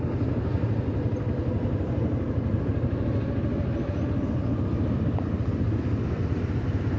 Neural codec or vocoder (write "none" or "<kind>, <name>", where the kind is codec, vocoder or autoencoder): none